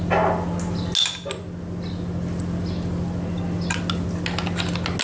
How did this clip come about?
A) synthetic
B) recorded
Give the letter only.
B